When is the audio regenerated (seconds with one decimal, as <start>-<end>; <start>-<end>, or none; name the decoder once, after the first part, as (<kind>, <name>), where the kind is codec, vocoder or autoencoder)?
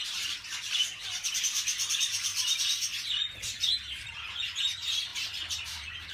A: 0.0-0.8 (vocoder, BigVGAN v2); 1.4-2.3; 4.6-6.1